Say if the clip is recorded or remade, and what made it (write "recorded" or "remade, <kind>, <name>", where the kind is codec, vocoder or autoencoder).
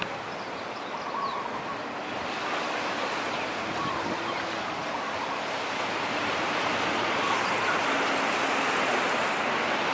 recorded